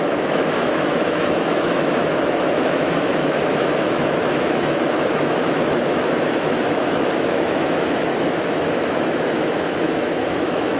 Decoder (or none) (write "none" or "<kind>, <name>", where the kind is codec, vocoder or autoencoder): autoencoder, DAC-VAE